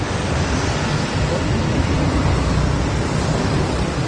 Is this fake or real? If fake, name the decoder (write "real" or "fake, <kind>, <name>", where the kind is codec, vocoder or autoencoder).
real